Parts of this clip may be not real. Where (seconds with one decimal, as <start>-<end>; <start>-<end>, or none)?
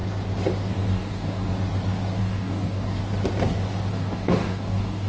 0.7-1.5; 2.2-3.0; 3.9-5.1